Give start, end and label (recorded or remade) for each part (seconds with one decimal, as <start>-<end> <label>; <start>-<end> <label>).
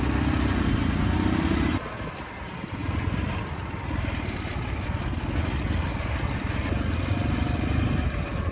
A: 0.0-2.8 recorded; 2.8-3.8 remade; 3.8-8.5 recorded